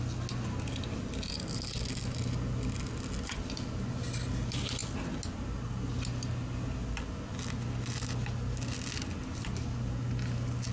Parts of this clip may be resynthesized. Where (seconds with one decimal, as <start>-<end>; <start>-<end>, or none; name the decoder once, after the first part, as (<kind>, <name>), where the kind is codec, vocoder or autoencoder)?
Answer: none

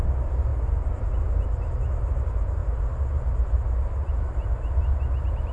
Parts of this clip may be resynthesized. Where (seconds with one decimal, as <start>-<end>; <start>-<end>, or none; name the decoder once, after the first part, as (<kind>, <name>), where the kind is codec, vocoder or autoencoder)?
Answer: none

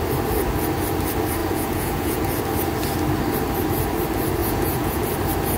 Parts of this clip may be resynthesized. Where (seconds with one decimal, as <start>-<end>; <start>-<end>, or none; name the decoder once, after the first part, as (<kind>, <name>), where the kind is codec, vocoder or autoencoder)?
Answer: 1.4-2.4 (vocoder, Vocos); 4.4-5.0

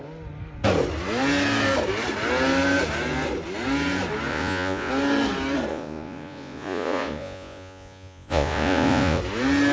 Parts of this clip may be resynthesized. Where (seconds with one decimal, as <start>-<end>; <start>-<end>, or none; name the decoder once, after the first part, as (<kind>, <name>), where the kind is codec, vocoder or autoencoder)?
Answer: 4.3-4.9 (vocoder, Vocos); 5.7-9.2

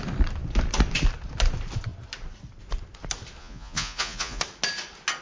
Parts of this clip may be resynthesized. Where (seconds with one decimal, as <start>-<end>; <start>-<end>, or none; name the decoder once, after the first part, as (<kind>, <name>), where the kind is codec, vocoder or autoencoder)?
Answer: 3.4-4.4 (vocoder, Vocos)

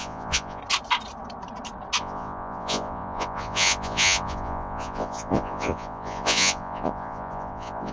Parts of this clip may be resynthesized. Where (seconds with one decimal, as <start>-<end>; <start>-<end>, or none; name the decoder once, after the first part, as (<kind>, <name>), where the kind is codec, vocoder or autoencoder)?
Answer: 0.0-0.6 (vocoder, Vocos); 2.0-7.9